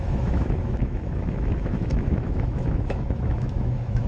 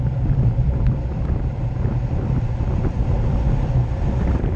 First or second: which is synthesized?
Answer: first